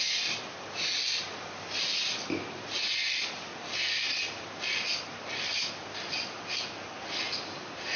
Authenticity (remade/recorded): recorded